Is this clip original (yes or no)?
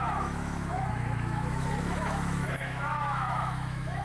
no